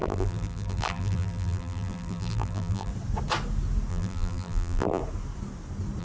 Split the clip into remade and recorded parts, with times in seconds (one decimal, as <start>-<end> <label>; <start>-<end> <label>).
0.0-2.9 remade; 2.9-3.9 recorded; 3.9-5.0 remade; 5.0-6.0 recorded